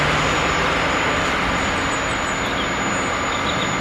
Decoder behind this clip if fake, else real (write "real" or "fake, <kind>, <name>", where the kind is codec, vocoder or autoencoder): real